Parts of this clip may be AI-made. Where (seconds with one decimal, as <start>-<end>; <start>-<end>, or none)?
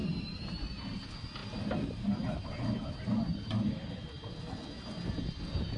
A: 0.0-0.7; 1.4-4.8